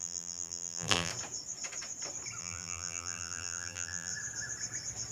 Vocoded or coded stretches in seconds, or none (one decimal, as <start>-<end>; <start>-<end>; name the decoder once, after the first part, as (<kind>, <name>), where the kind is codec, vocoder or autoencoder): 0.0-1.1 (vocoder, BigVGAN v2); 2.4-4.1